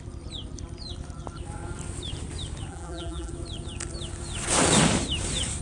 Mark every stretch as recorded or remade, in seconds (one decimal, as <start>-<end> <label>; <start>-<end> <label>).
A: 0.0-2.7 recorded; 2.7-3.3 remade; 3.3-5.6 recorded